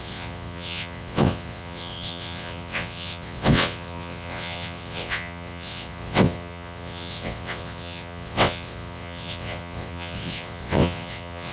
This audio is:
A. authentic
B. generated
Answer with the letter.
B